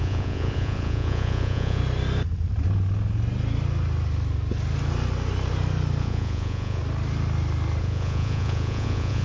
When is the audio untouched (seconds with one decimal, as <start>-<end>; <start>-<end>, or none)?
1.8-6.0; 6.8-7.8